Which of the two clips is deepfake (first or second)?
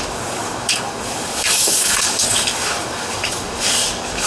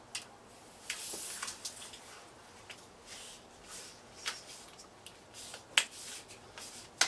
first